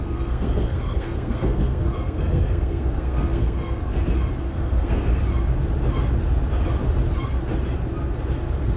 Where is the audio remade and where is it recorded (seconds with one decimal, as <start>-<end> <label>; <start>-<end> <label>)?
0.0-3.9 remade; 3.9-4.4 recorded; 4.4-5.2 remade; 5.2-8.8 recorded